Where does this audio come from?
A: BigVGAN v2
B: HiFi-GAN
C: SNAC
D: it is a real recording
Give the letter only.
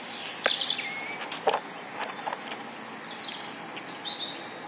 D